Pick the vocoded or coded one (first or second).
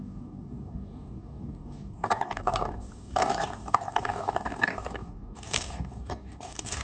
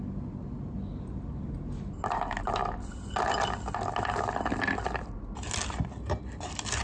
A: first